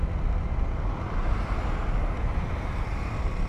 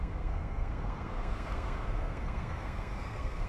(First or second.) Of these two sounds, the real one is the first